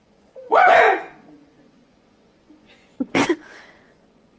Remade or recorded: remade